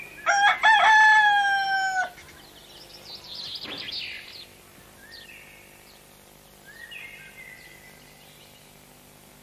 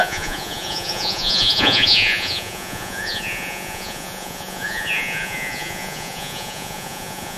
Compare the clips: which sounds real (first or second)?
first